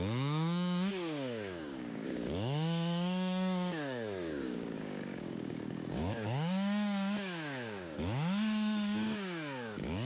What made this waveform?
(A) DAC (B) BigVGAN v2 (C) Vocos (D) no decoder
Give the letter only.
A